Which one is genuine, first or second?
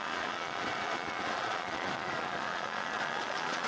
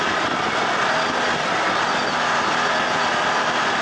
second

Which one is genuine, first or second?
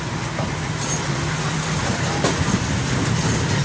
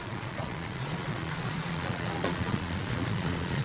first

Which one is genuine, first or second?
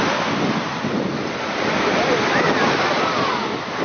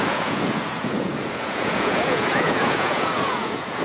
first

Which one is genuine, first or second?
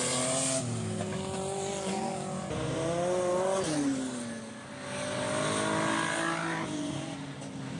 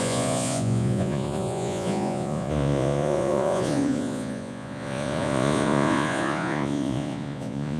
first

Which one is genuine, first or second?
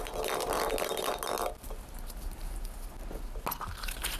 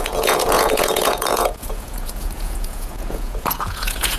first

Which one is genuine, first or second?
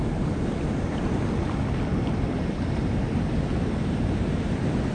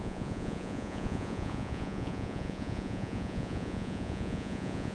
first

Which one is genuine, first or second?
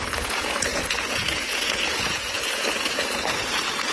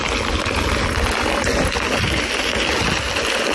second